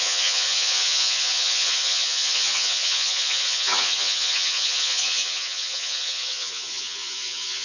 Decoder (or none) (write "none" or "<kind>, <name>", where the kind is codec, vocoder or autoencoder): vocoder, Vocos